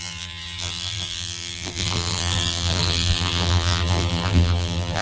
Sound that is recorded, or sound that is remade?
remade